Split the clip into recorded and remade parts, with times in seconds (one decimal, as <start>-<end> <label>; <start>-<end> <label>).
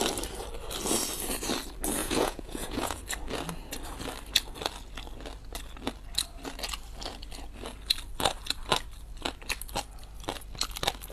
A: 0.0-2.0 recorded; 2.0-3.0 remade; 3.0-11.1 recorded